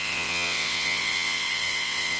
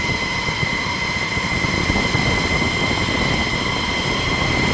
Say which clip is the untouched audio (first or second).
second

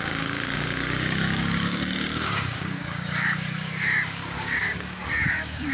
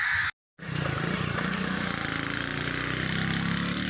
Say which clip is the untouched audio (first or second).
second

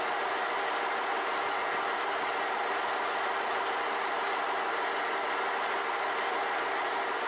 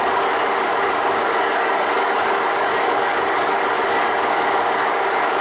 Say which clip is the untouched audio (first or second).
first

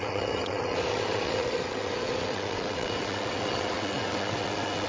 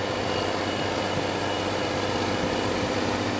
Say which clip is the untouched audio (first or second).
second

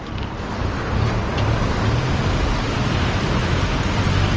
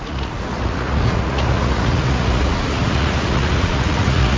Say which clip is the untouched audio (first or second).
first